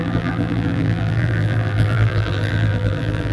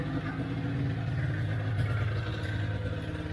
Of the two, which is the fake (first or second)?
first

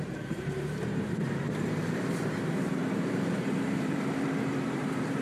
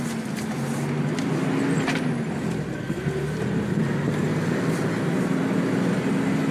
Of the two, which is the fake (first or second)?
first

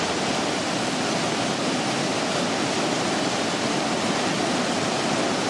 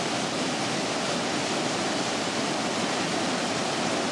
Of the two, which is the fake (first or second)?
first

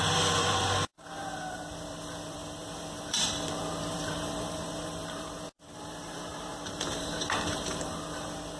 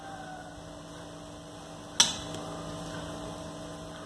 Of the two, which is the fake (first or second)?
first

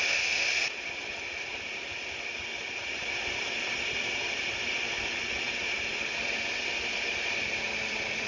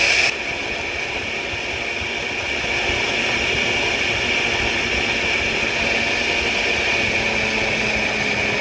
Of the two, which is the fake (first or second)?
first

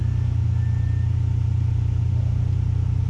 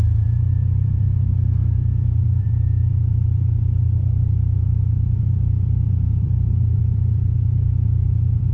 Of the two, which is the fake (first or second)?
second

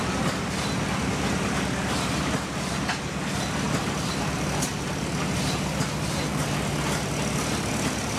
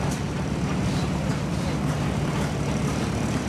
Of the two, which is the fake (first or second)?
second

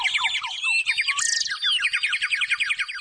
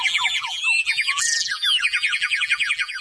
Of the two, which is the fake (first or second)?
second